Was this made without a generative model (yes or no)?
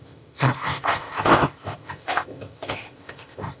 no